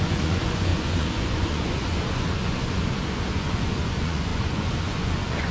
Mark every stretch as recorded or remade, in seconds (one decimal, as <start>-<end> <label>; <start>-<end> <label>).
0.0-5.5 remade

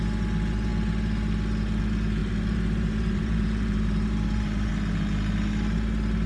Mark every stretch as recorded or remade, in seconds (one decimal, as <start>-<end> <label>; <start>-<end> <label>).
0.0-2.2 recorded; 2.2-4.7 remade; 4.7-6.3 recorded

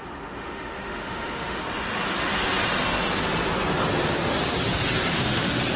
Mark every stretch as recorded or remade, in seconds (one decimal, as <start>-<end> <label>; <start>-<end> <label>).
0.0-1.6 remade; 1.6-5.1 recorded; 5.1-5.8 remade

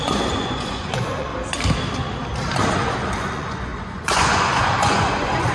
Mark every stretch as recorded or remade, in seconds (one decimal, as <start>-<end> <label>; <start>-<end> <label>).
0.0-1.3 remade; 1.3-2.7 recorded; 2.7-5.5 remade

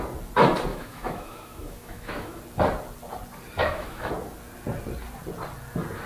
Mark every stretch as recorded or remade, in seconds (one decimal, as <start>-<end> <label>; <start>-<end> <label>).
0.0-0.7 recorded; 0.7-2.4 remade; 2.4-3.6 recorded; 3.6-4.1 remade; 4.1-6.1 recorded

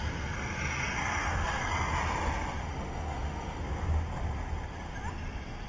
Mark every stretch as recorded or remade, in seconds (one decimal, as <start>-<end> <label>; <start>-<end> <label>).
0.0-1.1 recorded; 1.1-1.6 remade; 1.6-2.6 recorded; 2.6-3.6 remade; 3.6-5.7 recorded

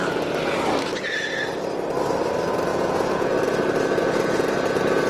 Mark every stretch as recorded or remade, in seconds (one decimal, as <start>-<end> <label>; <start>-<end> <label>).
0.0-2.7 recorded; 2.7-3.3 remade; 3.3-5.1 recorded

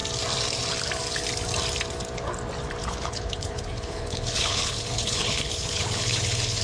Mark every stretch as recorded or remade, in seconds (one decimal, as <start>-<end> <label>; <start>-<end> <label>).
0.0-2.8 recorded; 2.8-6.6 remade